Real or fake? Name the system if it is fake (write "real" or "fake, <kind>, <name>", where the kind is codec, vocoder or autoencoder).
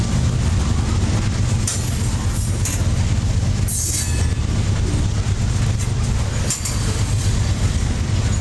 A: real